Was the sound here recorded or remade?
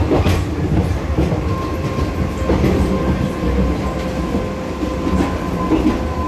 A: recorded